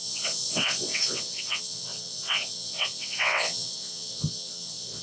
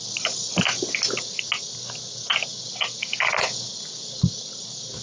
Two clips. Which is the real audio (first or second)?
second